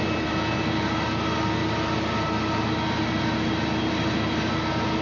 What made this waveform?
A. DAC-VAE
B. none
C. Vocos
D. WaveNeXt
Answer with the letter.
B